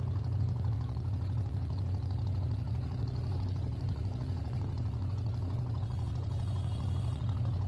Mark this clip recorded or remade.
remade